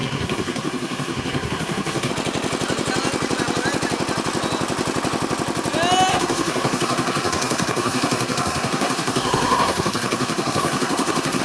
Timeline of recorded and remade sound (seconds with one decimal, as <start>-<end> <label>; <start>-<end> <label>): 0.0-2.1 remade; 2.1-6.1 recorded; 6.1-11.4 remade